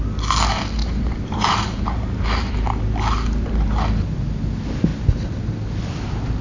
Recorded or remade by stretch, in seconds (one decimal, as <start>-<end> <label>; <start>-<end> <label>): 0.0-0.8 recorded; 0.8-2.5 remade; 2.5-6.4 recorded